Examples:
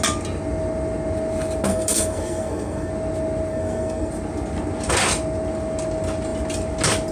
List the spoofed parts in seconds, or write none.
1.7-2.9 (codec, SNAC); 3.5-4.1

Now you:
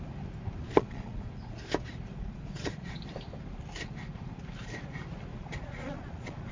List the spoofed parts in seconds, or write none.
0.6-1.3 (vocoder, Vocos); 2.1-3.0; 5.3-6.5

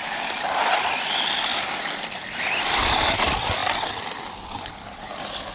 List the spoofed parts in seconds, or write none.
0.7-5.5 (vocoder, BigVGAN v2)

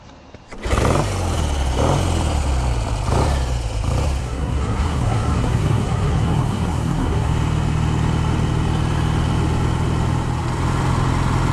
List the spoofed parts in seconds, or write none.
4.2-7.3 (codec, SNAC)

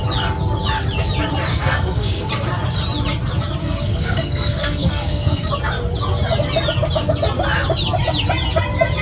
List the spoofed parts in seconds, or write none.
1.5-2.3 (codec, SNAC); 3.6-5.5